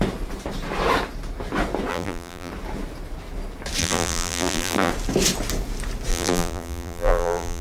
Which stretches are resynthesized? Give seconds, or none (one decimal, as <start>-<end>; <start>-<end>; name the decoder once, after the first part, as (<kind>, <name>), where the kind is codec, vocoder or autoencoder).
1.9-2.5 (vocoder, BigVGAN v2); 3.8-4.9; 6.1-7.6